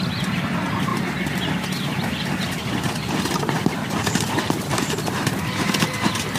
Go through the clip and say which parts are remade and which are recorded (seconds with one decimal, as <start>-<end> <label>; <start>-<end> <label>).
0.0-6.4 remade

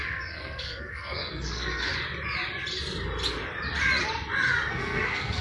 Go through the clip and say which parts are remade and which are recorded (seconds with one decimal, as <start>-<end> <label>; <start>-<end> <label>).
0.0-1.9 remade; 1.9-4.7 recorded; 4.7-5.4 remade

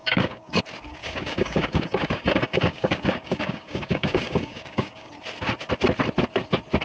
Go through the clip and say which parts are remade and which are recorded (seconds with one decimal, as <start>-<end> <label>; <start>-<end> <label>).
0.0-0.6 remade; 0.6-1.0 recorded; 1.0-5.1 remade; 5.1-6.8 recorded

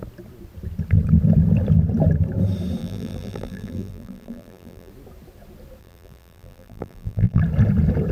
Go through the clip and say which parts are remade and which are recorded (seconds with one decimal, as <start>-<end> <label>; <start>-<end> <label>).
0.0-2.8 recorded; 2.8-4.9 remade; 4.9-5.8 recorded; 5.8-7.4 remade; 7.4-8.1 recorded

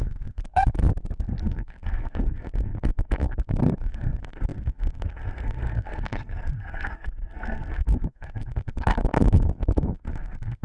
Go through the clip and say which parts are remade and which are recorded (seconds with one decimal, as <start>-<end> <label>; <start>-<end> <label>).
0.0-0.8 remade; 0.8-1.4 recorded; 1.4-10.6 remade

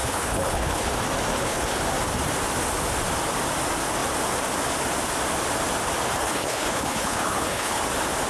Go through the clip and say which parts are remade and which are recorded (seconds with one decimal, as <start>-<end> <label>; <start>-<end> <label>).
0.0-0.9 remade; 0.9-1.3 recorded; 1.3-1.8 remade; 1.8-6.2 recorded; 6.2-7.8 remade; 7.8-8.3 recorded

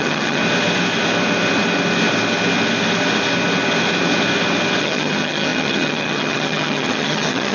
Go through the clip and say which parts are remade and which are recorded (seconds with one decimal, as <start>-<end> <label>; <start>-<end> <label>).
0.0-0.4 remade; 0.4-4.8 recorded; 4.8-7.5 remade